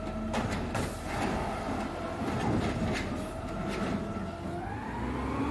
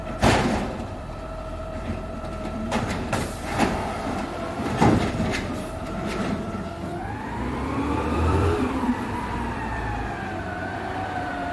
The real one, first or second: first